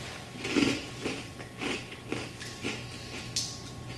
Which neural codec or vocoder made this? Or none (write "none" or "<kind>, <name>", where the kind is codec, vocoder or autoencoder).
none